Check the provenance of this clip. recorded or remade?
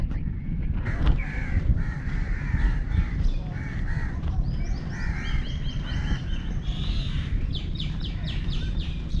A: remade